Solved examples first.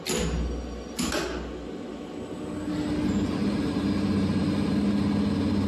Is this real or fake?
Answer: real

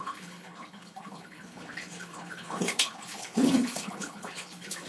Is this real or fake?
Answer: fake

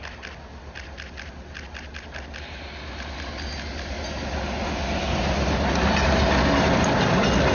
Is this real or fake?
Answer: real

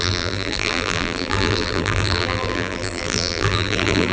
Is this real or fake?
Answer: fake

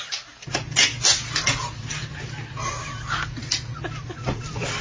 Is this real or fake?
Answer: real